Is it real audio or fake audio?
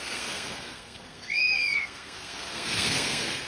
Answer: fake